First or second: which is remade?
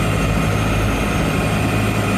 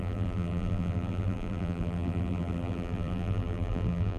second